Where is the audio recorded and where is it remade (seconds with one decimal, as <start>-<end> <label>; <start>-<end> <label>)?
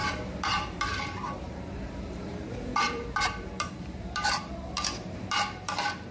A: 0.0-6.1 remade